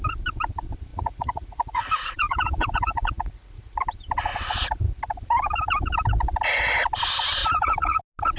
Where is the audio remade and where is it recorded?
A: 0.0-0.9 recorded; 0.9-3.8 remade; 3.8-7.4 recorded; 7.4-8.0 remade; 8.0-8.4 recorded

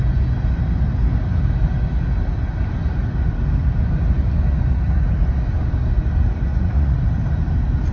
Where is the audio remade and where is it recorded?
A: 0.0-6.5 recorded; 6.5-7.0 remade; 7.0-7.9 recorded

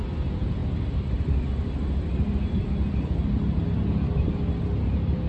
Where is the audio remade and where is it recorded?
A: 0.0-5.3 recorded

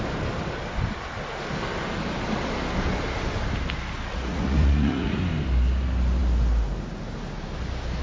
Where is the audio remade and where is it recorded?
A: 0.0-4.1 recorded; 4.1-5.2 remade; 5.2-8.0 recorded

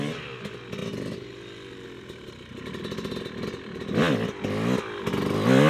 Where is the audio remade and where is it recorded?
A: 0.0-5.7 recorded

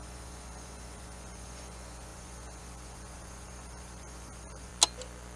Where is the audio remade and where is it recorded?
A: 0.0-4.7 remade; 4.7-5.4 recorded